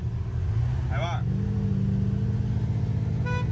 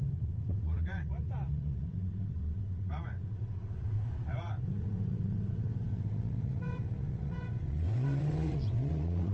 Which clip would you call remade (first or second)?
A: second